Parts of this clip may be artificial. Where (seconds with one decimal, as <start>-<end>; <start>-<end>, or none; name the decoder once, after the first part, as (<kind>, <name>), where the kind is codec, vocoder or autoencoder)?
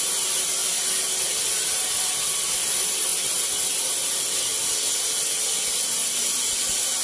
none